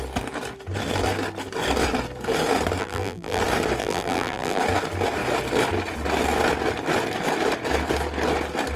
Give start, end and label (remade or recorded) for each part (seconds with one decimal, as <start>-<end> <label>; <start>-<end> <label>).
0.0-2.8 recorded; 2.8-3.4 remade; 3.4-3.8 recorded; 3.8-4.6 remade; 4.6-8.8 recorded